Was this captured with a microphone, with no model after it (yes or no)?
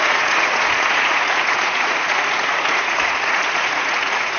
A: no